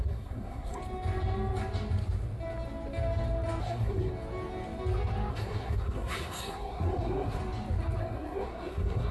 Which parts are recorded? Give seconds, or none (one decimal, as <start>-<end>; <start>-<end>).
0.8-3.6; 4.1-5.3; 7.4-8.0